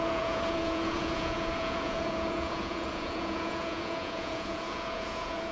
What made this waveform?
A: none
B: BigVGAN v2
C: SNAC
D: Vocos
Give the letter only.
D